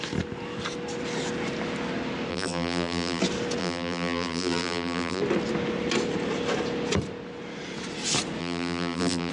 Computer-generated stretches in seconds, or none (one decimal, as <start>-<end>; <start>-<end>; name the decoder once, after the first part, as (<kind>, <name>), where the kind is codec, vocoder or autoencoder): 2.3-3.2 (vocoder, BigVGAN v2); 3.6-5.2; 8.4-9.3